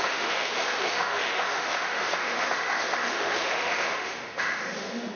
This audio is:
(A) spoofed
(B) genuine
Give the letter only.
A